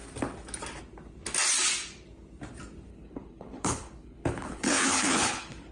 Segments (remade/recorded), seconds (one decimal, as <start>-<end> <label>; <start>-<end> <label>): 0.0-2.9 recorded; 2.9-5.7 remade